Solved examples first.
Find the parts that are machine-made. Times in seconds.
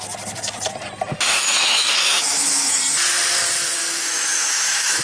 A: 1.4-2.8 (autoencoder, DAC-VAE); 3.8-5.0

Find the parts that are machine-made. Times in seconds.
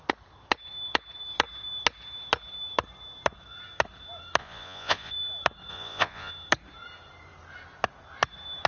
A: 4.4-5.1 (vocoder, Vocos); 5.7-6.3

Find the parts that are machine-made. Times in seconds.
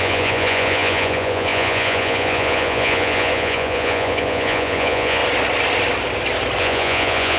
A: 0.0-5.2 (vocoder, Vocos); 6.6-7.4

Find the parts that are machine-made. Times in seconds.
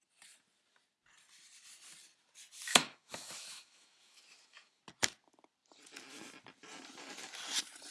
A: 2.7-4.8 (autoencoder, DAC-VAE)